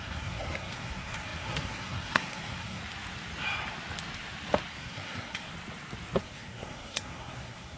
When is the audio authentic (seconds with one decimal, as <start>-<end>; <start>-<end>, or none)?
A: 2.8-4.7; 5.5-6.2